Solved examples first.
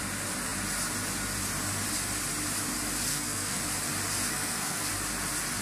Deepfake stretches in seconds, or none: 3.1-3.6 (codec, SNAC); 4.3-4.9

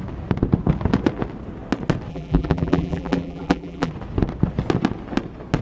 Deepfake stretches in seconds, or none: 2.1-3.9 (vocoder, BigVGAN v2)

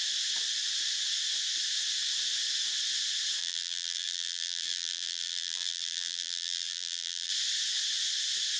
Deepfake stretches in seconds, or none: 3.4-7.3 (vocoder, BigVGAN v2)